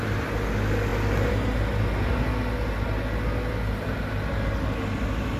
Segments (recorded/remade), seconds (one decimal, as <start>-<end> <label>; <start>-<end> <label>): 0.0-5.4 recorded